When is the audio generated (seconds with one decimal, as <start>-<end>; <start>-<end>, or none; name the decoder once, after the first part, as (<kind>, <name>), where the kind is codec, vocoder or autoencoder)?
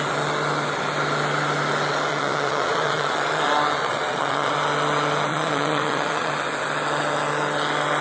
2.1-3.4 (vocoder, Vocos); 3.8-4.5; 5.3-6.3